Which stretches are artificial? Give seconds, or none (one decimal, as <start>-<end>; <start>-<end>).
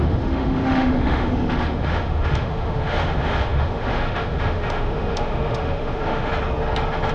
0.0-6.3